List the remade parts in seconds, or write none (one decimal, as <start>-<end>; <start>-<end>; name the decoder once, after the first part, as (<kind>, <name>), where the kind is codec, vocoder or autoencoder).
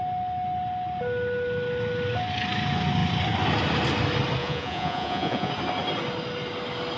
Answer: 4.4-5.5 (vocoder, Vocos)